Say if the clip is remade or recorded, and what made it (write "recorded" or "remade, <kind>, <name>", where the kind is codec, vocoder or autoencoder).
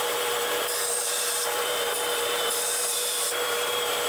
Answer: remade, vocoder, BigVGAN v2